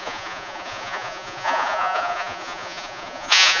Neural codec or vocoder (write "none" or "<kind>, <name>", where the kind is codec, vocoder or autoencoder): vocoder, Vocos